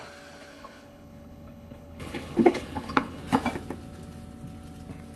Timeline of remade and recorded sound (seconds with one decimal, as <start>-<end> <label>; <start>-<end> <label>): 0.0-0.5 recorded; 0.5-3.2 remade; 3.2-5.2 recorded